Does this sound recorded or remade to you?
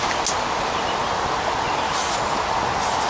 recorded